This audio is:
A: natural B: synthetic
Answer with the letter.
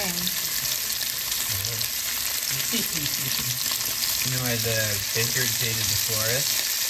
A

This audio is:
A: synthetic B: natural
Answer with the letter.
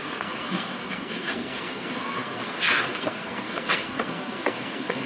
A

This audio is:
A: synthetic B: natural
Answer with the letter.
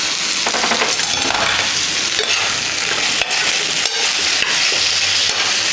B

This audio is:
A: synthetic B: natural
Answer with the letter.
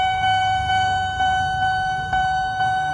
A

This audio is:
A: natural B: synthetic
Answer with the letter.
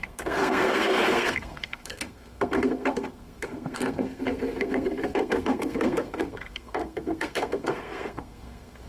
B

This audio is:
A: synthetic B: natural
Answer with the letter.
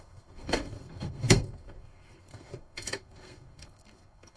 A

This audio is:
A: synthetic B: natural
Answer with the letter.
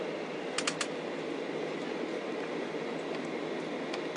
B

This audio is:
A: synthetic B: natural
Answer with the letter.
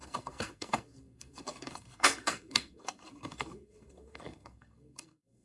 A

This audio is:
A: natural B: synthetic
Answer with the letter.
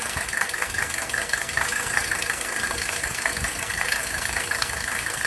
B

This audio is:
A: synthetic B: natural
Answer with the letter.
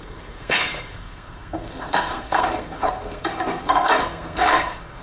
A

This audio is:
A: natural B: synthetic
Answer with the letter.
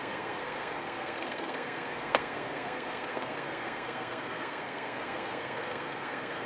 B